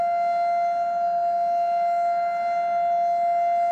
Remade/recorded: recorded